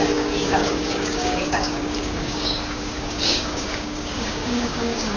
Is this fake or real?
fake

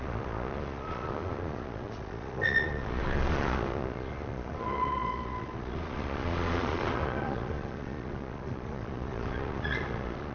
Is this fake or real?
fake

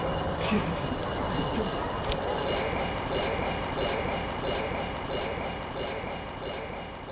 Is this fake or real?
fake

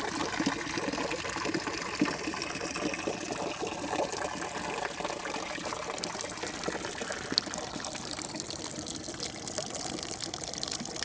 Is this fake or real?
real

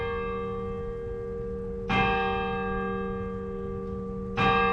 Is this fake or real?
real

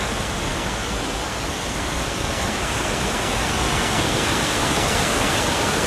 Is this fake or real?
fake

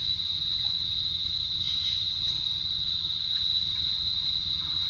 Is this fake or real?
fake